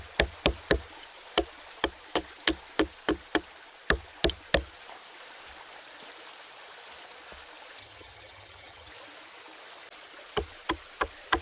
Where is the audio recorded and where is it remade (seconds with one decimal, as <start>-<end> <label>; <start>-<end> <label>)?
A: 0.0-7.8 recorded; 7.8-8.9 remade; 8.9-11.4 recorded